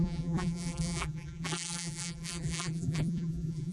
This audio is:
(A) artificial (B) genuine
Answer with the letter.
A